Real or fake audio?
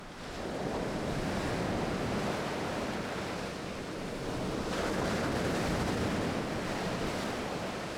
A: real